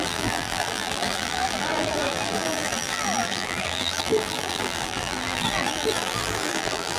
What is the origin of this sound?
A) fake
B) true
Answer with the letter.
A